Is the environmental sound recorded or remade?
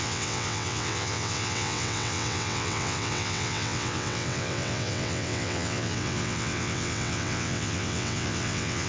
remade